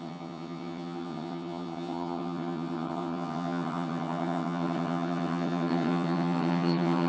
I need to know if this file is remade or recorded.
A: remade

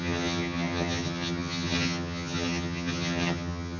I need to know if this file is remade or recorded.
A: remade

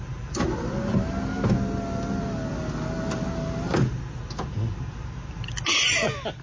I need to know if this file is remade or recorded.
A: recorded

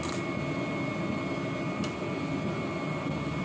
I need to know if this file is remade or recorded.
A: recorded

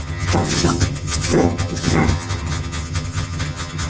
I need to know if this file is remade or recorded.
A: remade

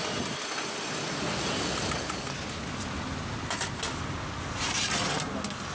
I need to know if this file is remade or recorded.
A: recorded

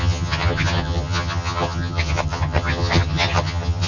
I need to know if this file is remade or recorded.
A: remade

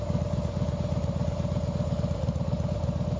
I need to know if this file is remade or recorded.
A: recorded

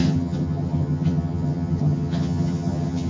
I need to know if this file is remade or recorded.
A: remade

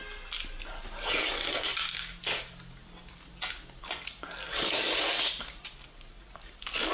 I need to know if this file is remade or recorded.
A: recorded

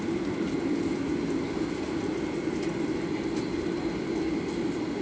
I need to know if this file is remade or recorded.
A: recorded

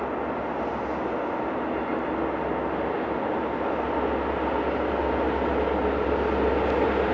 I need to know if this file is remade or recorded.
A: recorded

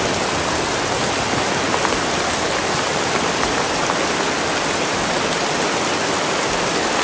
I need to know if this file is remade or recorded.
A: recorded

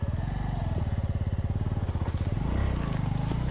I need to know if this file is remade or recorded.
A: recorded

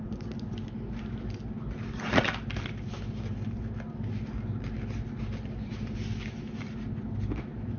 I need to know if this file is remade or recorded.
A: recorded